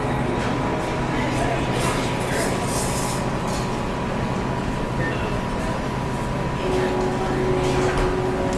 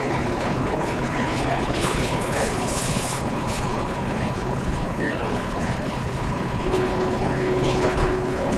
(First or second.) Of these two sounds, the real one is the first